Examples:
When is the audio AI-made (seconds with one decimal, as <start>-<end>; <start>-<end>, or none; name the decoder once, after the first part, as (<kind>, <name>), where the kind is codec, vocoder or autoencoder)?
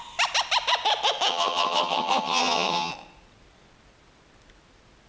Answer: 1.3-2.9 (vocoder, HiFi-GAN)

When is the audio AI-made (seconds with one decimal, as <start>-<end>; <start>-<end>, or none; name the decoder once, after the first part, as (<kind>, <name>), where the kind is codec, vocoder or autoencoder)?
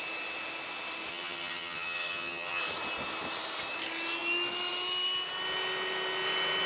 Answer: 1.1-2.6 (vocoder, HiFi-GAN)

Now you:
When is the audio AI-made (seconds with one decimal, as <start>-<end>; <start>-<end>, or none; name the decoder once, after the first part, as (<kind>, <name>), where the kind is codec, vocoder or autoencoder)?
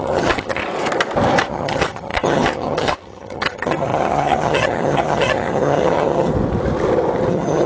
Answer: 0.0-0.6 (vocoder, HiFi-GAN); 1.5-6.3; 7.3-7.7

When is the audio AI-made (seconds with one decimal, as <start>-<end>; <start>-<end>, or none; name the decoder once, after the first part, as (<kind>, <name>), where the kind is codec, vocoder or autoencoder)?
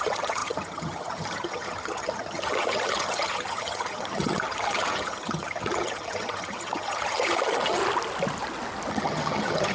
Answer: 0.0-7.8 (vocoder, HiFi-GAN); 8.9-9.7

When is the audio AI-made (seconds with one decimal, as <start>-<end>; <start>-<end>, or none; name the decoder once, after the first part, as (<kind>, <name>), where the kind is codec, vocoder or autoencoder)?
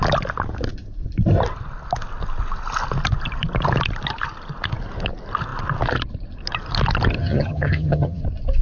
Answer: 7.2-8.2 (vocoder, HiFi-GAN)